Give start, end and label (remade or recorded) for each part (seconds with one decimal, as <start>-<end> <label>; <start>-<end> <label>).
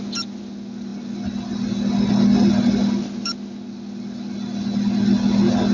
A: 0.0-5.7 recorded